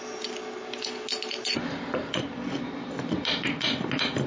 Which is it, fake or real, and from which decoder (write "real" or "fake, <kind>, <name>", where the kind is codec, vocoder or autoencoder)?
real